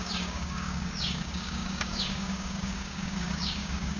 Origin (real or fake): fake